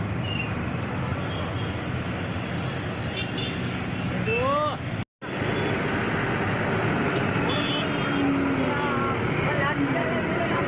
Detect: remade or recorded recorded